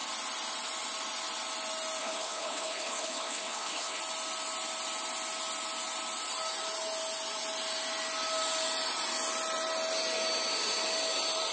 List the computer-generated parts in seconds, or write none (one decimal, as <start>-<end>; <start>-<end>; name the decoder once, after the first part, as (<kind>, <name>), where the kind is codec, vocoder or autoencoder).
2.0-4.0 (codec, HILCodec)